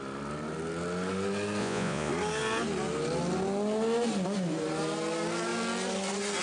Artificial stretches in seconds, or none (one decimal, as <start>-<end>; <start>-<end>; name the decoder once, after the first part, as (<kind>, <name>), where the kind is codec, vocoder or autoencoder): 1.6-2.1 (vocoder, Vocos)